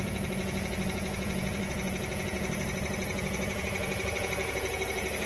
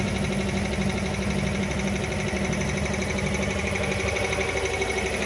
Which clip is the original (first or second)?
second